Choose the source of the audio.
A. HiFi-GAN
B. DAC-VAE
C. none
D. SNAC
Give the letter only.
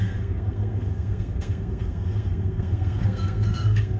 D